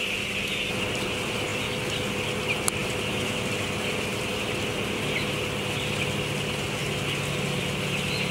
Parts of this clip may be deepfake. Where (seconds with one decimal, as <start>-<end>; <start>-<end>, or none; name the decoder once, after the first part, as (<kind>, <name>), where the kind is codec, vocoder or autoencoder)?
none